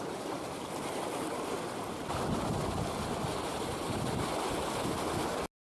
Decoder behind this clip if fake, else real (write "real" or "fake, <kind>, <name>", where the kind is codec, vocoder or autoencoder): real